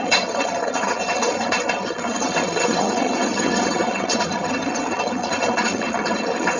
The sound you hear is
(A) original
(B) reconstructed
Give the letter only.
B